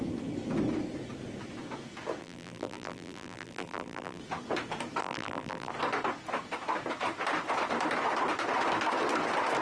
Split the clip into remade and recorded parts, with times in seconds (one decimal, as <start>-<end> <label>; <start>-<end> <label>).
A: 0.0-2.2 recorded; 2.2-4.2 remade; 4.2-5.0 recorded; 5.0-5.7 remade; 5.7-9.6 recorded